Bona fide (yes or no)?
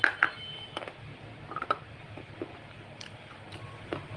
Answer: no